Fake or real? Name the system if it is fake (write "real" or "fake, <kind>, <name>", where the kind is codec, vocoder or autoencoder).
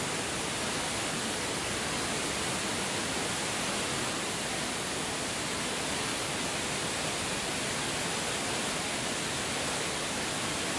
real